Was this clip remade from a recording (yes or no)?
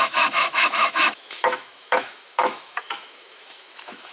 yes